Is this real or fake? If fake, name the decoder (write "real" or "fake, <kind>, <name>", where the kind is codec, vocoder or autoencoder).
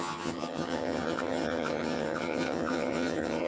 fake, vocoder, HiFi-GAN